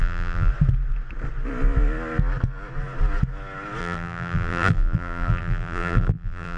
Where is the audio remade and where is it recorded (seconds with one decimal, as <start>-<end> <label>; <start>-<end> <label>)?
0.0-0.5 remade; 0.5-3.8 recorded; 3.8-6.6 remade